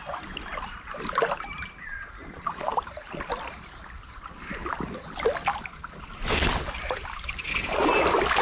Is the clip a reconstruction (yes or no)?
no